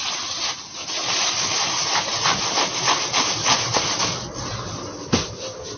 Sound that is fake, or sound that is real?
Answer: real